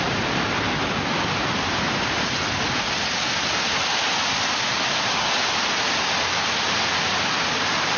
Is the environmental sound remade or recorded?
recorded